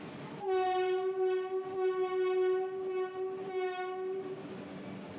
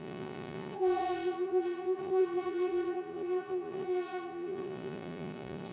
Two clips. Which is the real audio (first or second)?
first